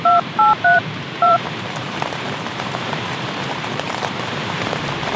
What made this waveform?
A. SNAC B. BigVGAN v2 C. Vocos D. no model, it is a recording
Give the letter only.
B